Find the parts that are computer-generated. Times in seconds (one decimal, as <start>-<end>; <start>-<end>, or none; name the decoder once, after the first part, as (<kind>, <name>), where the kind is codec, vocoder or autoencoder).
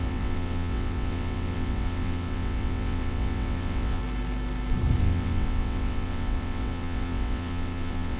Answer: 0.0-4.0 (vocoder, WaveNeXt); 5.0-8.2